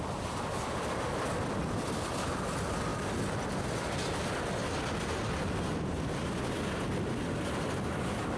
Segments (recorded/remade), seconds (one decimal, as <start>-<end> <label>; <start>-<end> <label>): 0.0-8.4 recorded